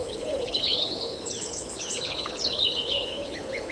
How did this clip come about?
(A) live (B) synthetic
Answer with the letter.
B